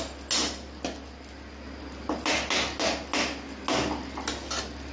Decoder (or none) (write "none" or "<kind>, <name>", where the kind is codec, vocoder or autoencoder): none